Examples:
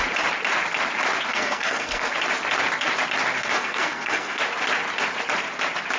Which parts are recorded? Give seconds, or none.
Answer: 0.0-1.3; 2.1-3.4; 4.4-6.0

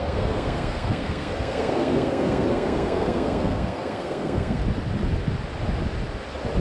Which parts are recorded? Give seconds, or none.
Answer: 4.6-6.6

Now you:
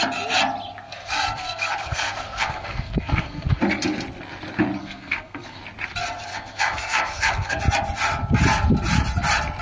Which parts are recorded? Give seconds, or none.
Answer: 0.0-0.8; 3.6-4.8; 5.6-6.3; 7.6-9.6

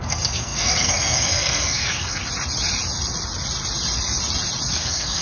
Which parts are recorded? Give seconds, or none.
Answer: 2.2-4.7